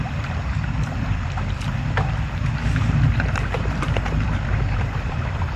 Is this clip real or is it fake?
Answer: fake